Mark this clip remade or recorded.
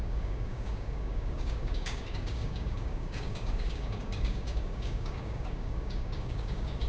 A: remade